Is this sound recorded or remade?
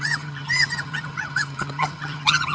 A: remade